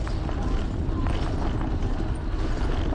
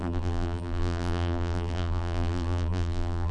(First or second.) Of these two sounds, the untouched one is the first